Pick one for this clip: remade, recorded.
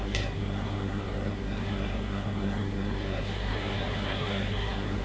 remade